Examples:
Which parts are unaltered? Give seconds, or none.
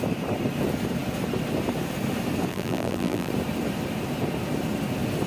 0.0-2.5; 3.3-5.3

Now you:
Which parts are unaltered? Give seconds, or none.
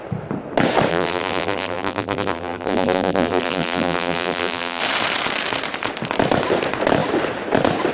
0.0-0.9; 4.8-7.9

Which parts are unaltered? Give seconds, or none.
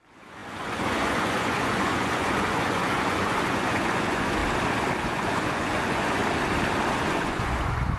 4.4-5.0; 6.2-7.1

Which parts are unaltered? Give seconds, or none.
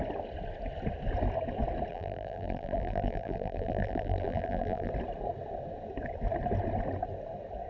0.0-1.9; 4.9-7.7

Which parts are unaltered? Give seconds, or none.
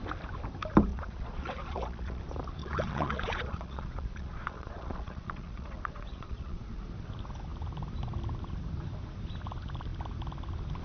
0.0-0.9; 2.2-2.6; 6.8-10.8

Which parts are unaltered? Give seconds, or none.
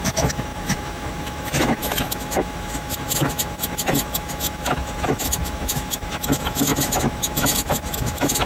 none